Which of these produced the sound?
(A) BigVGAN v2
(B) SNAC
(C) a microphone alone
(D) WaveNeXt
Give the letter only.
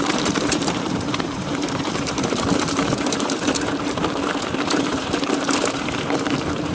A